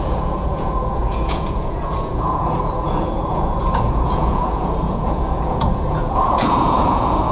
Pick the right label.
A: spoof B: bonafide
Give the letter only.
A